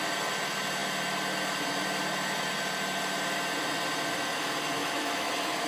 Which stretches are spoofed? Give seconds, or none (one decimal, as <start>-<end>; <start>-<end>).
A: 4.8-5.3